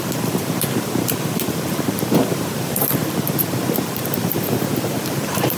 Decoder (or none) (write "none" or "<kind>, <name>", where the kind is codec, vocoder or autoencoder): vocoder, BigVGAN v2